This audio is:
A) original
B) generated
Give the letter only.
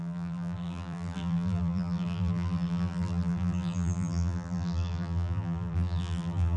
B